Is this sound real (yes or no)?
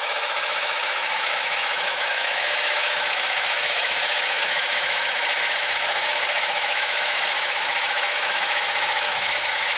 no